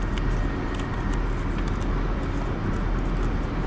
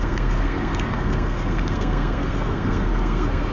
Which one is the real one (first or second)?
first